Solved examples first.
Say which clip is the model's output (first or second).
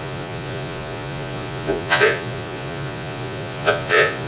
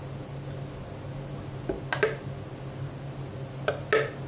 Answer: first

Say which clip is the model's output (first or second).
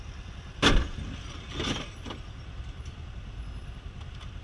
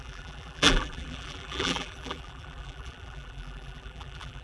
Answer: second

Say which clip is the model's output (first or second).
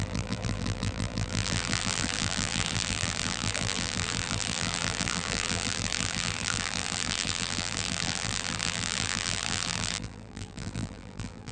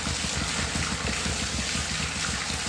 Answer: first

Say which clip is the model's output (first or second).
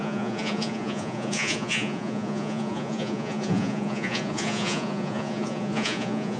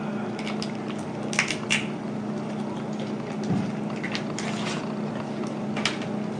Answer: first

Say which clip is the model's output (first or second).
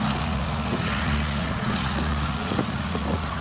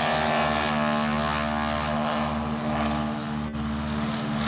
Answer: first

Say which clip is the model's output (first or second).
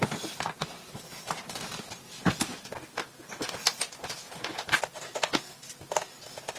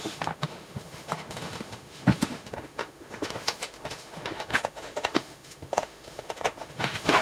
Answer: second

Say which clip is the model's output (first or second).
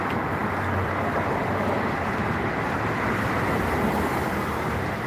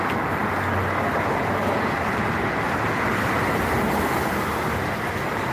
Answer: first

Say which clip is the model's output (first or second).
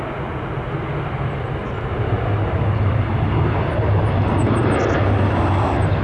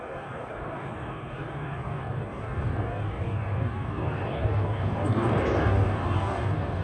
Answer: second